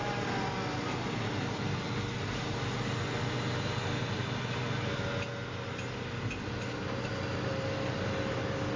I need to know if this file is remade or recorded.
recorded